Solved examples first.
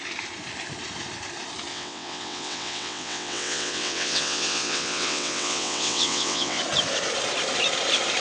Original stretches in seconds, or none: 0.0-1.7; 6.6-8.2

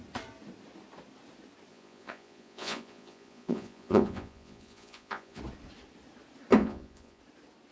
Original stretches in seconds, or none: 0.0-1.7; 5.4-6.6; 7.2-7.7

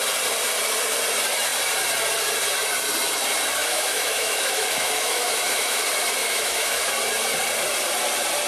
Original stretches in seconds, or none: 0.0-3.6; 5.8-6.2; 6.9-8.5

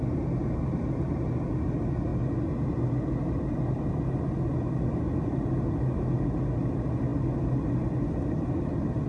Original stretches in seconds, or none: 0.0-9.1

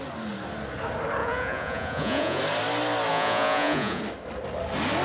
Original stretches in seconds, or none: 0.0-1.2; 2.4-3.1; 4.0-5.0

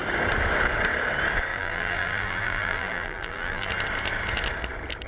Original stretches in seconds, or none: 0.0-1.5; 3.7-5.1